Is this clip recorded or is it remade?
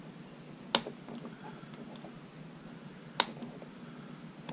recorded